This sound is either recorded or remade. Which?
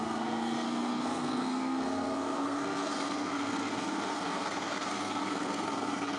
remade